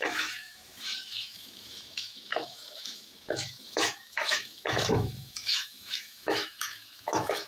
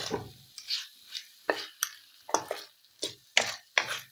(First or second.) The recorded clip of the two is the second